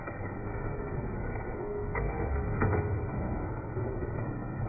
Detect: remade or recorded remade